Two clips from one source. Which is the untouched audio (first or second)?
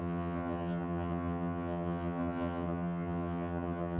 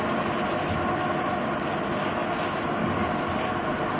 second